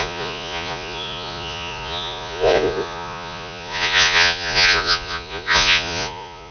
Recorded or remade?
remade